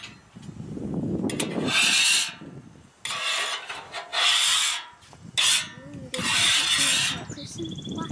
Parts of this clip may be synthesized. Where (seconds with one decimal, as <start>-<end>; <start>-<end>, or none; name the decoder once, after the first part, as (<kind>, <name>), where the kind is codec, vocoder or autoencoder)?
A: none

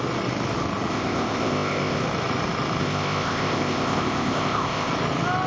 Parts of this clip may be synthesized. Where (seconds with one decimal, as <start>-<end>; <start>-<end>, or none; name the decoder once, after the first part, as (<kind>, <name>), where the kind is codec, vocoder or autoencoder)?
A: 0.9-2.0 (codec, ZipCodec); 2.8-4.9

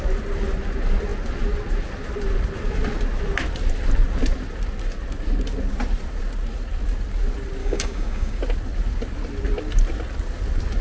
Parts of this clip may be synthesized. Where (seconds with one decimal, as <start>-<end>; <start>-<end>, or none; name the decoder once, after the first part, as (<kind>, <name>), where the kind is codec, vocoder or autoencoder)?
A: 7.6-8.4 (codec, DAC)

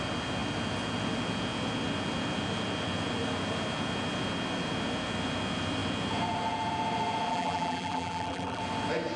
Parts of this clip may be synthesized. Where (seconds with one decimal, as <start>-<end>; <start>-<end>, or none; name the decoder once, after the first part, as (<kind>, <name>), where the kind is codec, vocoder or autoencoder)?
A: 7.3-8.6 (vocoder, BigVGAN v2)

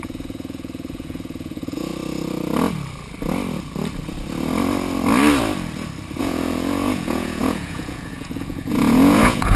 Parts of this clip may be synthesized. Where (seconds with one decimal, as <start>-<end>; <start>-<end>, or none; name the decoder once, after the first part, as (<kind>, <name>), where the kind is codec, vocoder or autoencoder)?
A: 0.0-1.9 (vocoder, Vocos); 6.2-9.6

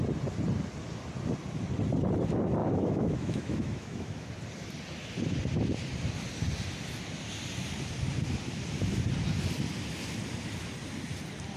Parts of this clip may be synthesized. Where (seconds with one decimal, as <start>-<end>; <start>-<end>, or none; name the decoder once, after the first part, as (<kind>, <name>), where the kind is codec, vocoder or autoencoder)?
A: 2.6-4.3 (autoencoder, DAC-VAE)

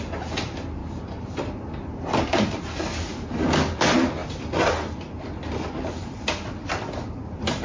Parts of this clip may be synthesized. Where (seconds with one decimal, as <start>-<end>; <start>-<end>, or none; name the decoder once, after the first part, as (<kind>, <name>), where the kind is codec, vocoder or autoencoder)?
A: 0.8-2.6 (vocoder, BigVGAN v2); 4.2-6.8